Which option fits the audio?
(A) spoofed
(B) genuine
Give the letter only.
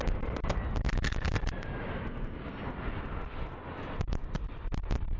B